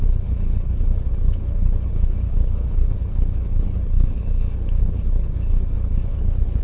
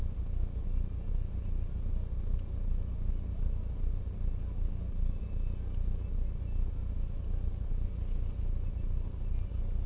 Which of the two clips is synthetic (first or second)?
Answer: first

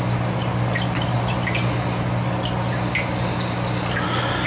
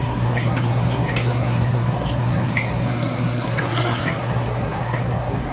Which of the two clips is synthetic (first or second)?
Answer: second